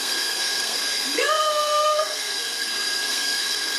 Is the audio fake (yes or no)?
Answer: yes